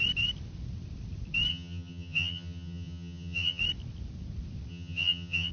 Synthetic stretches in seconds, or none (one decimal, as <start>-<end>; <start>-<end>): 1.5-3.6; 4.7-5.5